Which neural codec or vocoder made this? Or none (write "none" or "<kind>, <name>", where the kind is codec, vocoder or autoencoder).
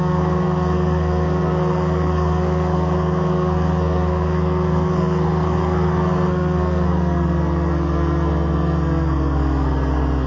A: codec, SNAC